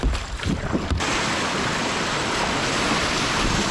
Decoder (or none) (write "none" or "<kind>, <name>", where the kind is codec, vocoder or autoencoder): none